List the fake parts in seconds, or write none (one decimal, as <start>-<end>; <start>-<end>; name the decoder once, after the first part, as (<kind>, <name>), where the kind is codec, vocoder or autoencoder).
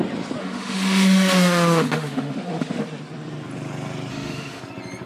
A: 0.4-2.8 (autoencoder, DAC-VAE); 4.1-4.6